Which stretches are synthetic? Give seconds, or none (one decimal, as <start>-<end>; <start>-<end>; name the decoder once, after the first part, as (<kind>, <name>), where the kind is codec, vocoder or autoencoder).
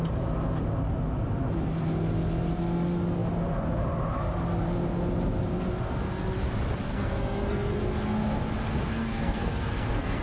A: 6.9-7.8 (codec, SNAC); 9.0-10.2